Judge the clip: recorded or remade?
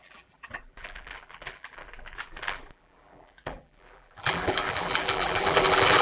remade